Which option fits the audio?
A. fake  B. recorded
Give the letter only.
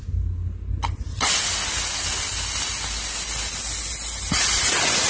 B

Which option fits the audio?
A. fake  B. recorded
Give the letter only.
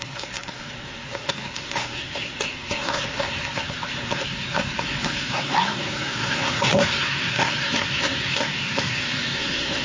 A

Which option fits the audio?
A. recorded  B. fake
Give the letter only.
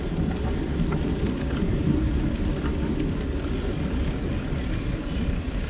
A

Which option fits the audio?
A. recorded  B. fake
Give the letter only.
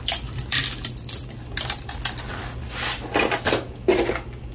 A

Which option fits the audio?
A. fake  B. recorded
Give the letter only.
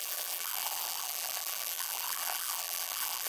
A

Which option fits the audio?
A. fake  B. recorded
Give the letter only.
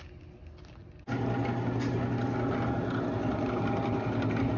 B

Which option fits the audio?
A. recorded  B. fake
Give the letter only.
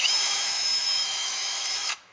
B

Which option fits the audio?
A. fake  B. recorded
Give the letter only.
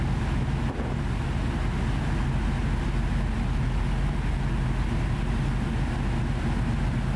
B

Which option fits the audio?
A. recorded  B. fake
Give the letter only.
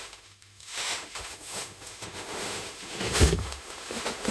B